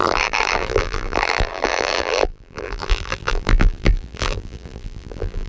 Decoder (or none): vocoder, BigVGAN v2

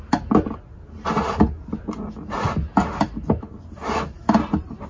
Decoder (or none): none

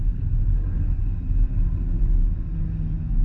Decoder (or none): none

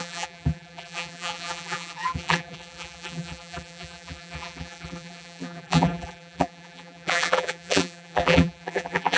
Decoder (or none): vocoder, BigVGAN v2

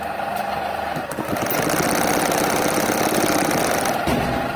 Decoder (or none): none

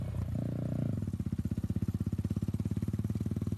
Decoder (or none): none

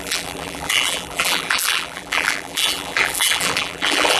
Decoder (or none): vocoder, BigVGAN v2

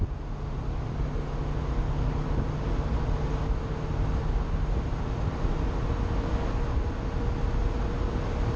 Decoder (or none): none